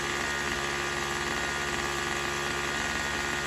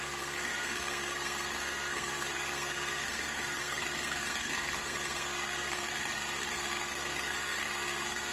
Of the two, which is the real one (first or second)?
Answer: first